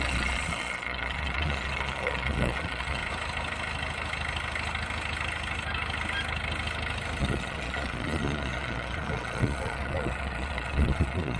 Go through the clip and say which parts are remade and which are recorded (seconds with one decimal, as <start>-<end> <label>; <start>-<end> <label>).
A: 0.0-3.0 remade; 3.0-7.2 recorded; 7.2-11.4 remade